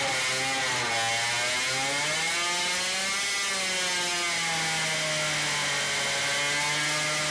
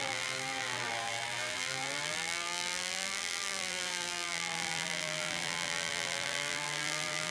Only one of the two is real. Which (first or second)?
first